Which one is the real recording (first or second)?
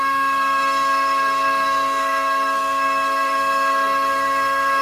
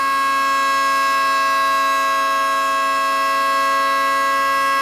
second